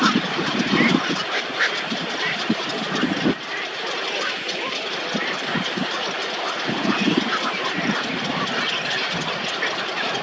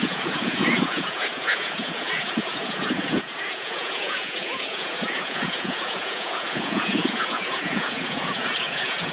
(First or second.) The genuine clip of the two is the first